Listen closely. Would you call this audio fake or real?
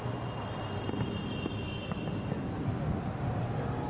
real